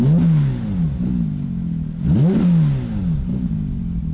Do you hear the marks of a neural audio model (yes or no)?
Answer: no